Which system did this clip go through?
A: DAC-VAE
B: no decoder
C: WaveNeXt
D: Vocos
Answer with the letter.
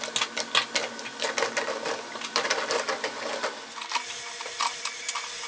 B